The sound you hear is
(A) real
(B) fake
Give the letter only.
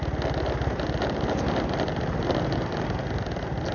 A